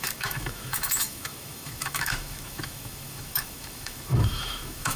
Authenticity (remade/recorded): remade